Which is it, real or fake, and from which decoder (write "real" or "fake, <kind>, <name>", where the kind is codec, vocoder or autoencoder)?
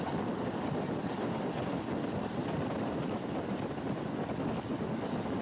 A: real